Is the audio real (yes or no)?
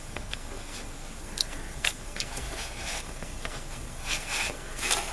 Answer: no